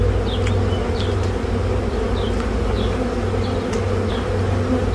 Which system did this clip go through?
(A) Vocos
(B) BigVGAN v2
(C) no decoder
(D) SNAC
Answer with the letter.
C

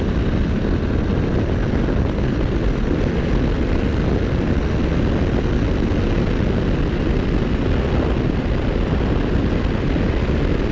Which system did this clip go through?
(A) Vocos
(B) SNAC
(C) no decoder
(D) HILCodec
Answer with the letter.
C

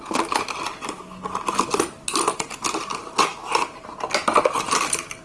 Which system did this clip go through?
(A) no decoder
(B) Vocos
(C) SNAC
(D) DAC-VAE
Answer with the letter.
A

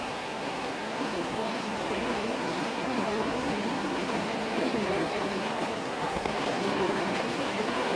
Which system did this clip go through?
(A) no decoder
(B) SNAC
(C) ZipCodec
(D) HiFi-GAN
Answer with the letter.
B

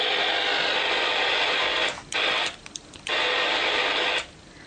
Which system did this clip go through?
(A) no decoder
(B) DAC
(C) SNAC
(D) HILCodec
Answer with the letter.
A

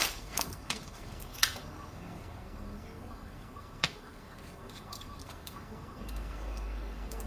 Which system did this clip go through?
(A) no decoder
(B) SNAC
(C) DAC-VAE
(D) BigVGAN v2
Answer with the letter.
B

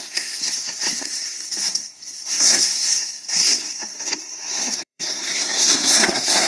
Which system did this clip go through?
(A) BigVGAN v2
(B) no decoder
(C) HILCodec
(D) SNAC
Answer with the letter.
D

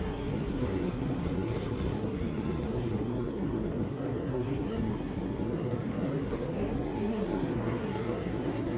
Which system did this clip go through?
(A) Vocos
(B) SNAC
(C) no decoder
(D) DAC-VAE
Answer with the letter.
B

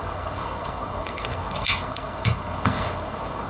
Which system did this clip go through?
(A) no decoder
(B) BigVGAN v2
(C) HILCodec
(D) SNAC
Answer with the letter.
D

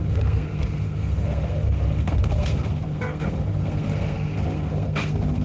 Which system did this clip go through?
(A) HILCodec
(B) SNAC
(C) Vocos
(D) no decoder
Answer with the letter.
B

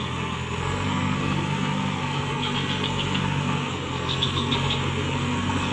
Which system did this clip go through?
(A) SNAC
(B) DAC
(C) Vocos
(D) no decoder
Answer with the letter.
A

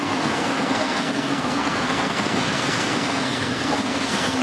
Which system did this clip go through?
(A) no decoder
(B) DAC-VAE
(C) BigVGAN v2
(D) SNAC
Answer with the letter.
D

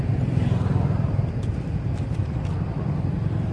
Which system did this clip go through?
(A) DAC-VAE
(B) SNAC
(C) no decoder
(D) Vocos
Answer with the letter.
C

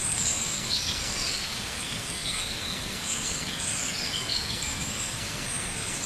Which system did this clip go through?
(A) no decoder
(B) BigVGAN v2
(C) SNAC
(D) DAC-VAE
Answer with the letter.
C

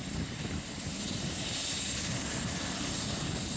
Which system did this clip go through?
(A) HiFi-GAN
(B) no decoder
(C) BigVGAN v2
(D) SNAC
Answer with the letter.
B